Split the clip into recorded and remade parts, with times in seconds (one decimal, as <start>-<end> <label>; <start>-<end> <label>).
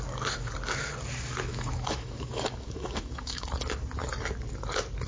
0.0-1.5 recorded; 1.5-3.5 remade; 3.5-5.1 recorded